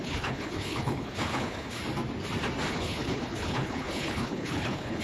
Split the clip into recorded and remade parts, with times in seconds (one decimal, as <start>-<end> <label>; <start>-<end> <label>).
0.0-1.8 remade; 1.8-2.7 recorded; 2.7-5.0 remade